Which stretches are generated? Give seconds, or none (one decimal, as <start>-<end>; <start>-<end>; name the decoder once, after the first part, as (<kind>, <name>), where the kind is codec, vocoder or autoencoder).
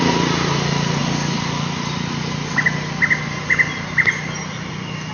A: none